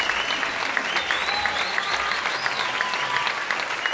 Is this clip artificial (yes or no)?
no